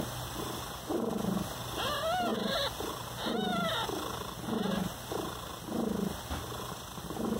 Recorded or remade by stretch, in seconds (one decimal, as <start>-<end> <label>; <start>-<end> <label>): 0.0-7.4 recorded

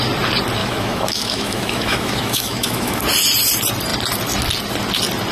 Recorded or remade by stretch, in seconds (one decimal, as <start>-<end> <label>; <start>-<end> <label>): 0.0-0.6 recorded; 0.6-3.0 remade; 3.0-5.3 recorded

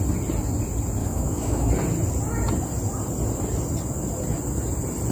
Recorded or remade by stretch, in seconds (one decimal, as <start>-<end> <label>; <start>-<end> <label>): 0.0-1.0 recorded; 1.0-1.7 remade; 1.7-5.1 recorded

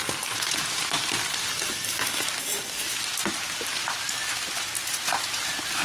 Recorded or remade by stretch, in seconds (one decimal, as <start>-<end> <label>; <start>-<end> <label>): 0.0-5.8 recorded

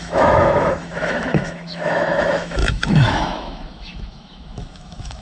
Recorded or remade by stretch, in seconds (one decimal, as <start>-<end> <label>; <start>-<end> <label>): 0.0-5.2 remade

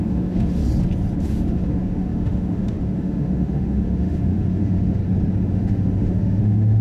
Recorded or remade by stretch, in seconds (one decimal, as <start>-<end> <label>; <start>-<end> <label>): 0.0-0.6 remade; 0.6-1.2 recorded; 1.2-5.0 remade; 5.0-5.5 recorded; 5.5-6.8 remade